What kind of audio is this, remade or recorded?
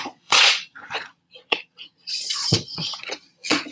remade